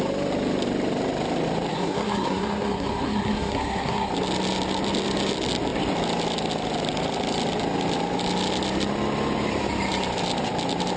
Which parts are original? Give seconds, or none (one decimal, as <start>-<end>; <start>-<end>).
0.0-1.7; 4.1-11.0